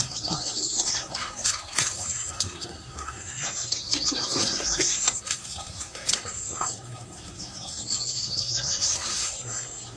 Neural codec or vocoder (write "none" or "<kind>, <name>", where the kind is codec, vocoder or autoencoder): codec, SNAC